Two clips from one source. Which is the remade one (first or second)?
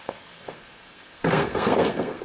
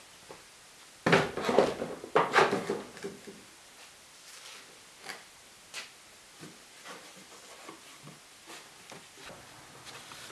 first